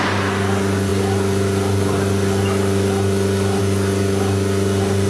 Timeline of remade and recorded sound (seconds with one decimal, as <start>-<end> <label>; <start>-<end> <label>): 0.0-5.1 recorded